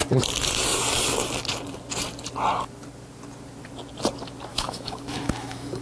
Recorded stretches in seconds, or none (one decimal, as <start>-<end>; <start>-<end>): 0.0-4.5